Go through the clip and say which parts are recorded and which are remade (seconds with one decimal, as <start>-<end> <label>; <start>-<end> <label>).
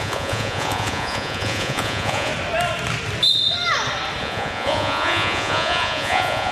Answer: 0.0-2.3 remade; 2.3-4.2 recorded; 4.2-6.5 remade